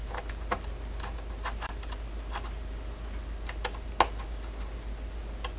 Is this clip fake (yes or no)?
no